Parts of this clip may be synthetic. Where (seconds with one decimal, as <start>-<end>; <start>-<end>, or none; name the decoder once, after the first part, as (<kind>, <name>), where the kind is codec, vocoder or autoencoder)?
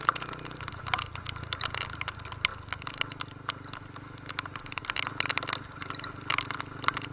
6.3-7.1 (vocoder, BigVGAN v2)